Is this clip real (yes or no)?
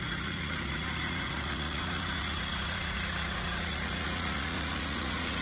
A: no